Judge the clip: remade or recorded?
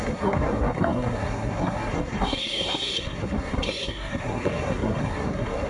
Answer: remade